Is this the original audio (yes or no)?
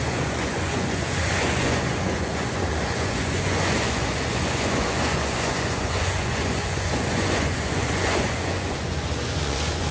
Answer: no